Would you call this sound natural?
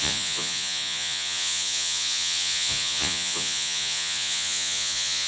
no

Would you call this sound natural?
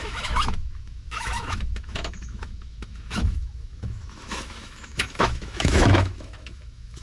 no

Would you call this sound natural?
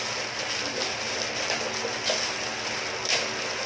yes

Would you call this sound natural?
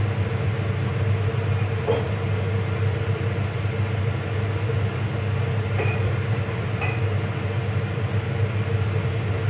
yes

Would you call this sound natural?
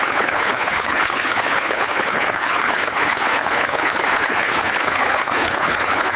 no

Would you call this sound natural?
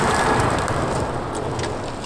yes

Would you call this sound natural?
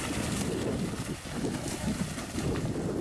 yes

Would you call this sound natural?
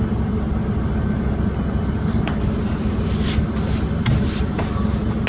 yes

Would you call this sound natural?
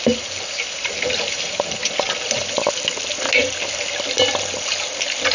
yes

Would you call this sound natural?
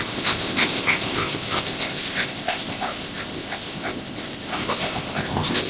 no